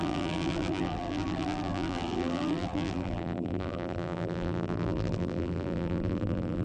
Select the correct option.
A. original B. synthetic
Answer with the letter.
B